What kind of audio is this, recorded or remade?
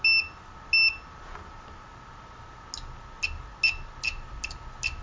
recorded